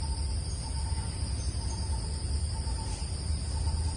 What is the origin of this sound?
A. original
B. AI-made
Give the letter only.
A